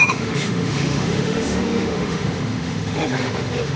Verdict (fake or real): fake